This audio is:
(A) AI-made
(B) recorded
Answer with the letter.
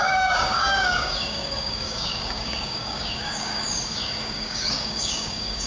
A